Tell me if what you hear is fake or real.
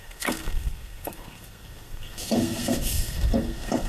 fake